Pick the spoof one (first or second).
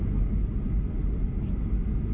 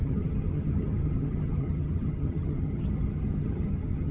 second